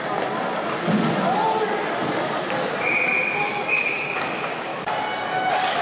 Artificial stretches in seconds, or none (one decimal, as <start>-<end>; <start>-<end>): 3.5-4.7